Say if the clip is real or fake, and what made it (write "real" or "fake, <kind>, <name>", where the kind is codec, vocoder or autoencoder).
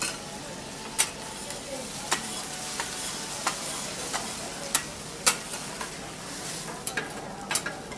real